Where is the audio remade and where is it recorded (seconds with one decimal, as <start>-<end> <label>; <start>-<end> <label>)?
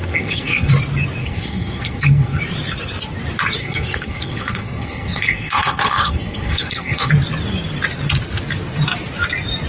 0.0-0.7 remade; 0.7-1.2 recorded; 1.2-2.4 remade; 2.4-3.6 recorded; 3.6-7.1 remade; 7.1-9.7 recorded